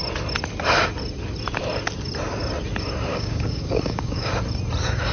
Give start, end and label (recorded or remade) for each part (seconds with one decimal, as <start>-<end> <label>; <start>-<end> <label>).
0.0-3.1 recorded; 3.1-4.3 remade; 4.3-5.1 recorded